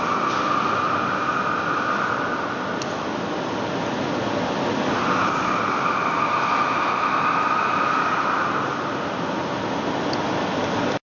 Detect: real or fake real